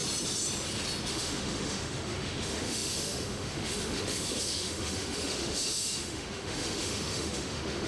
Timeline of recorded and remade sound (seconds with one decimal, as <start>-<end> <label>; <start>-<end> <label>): 0.0-1.1 recorded; 1.1-7.9 remade